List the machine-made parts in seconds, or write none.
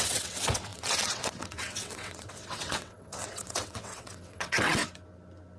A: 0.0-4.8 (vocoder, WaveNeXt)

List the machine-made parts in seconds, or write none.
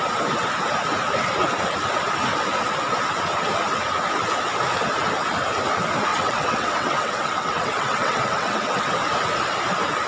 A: 6.1-8.9 (vocoder, WaveNeXt)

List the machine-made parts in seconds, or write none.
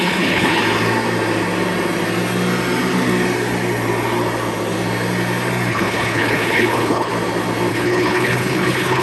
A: 0.0-0.6 (codec, HILCodec); 5.7-7.1; 7.7-9.0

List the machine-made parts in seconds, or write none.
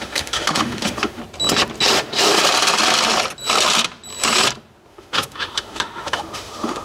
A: 0.0-1.2 (autoencoder, DAC-VAE); 1.9-2.3; 4.9-6.8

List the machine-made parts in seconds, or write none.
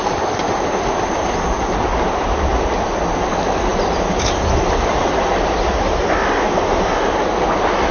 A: none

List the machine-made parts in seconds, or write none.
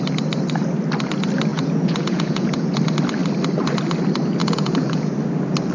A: 1.5-2.7 (vocoder, Vocos); 4.4-5.1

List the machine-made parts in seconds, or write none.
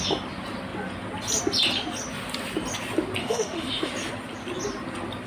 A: 3.2-3.9 (autoencoder, DAC-VAE)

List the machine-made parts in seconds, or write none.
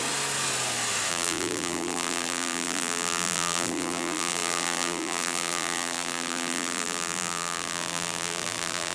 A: 1.1-8.9 (vocoder, BigVGAN v2)